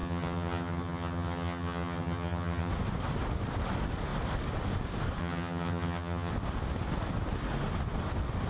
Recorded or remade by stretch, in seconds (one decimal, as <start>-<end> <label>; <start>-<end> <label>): 0.0-2.7 remade; 2.7-5.2 recorded; 5.2-6.3 remade; 6.3-8.5 recorded